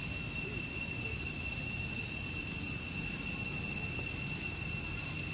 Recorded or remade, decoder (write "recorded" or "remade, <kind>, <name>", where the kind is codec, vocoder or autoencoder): recorded